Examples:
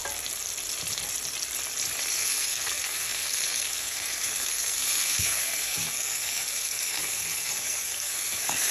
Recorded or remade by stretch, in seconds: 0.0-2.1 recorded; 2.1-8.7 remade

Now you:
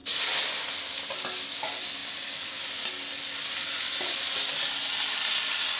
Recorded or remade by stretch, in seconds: 0.0-5.8 recorded

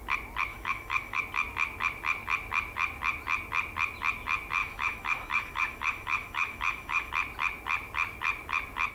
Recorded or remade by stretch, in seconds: 0.0-0.5 recorded; 0.5-1.2 remade; 1.2-4.6 recorded; 4.6-7.1 remade; 7.1-8.9 recorded

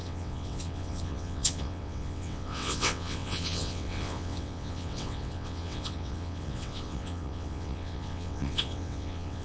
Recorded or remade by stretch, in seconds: 0.0-9.4 remade

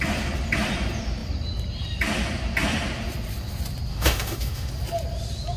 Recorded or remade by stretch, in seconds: 0.0-3.9 recorded; 3.9-4.7 remade; 4.7-5.6 recorded